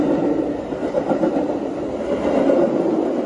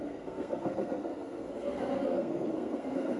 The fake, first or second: second